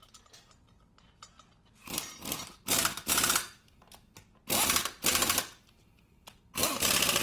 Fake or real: real